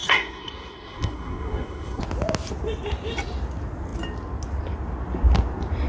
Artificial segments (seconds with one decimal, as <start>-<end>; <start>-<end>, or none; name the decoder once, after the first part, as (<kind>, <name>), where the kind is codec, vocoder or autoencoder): 0.0-2.0 (codec, SNAC)